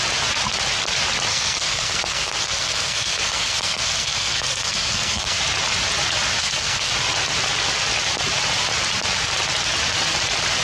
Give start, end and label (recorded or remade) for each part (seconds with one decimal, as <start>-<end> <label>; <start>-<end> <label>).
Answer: 0.0-1.3 recorded; 1.3-5.4 remade; 5.4-6.4 recorded; 6.4-6.9 remade; 6.9-10.6 recorded

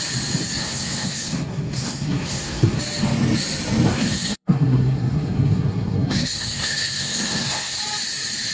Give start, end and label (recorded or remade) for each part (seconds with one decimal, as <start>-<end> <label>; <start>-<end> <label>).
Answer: 0.0-0.6 recorded; 0.6-2.8 remade; 2.8-3.9 recorded; 3.9-7.8 remade; 7.8-8.5 recorded